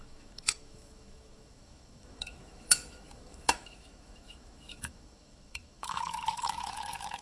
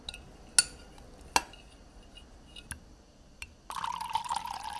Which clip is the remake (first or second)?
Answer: first